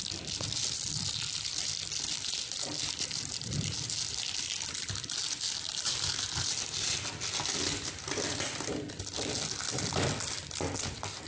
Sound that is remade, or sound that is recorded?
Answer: recorded